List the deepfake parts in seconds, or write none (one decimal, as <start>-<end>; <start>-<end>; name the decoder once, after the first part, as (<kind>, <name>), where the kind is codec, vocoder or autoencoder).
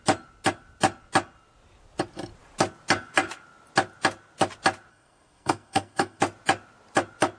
4.9-6.2 (codec, SNAC)